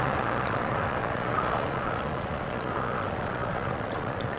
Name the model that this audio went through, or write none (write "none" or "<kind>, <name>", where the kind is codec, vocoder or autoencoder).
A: vocoder, Vocos